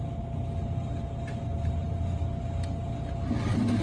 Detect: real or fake real